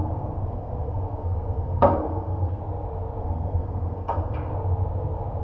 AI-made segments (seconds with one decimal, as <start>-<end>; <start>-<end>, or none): 0.0-2.6; 3.2-4.5